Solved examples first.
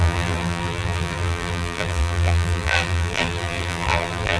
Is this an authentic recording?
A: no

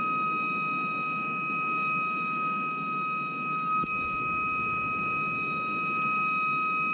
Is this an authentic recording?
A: no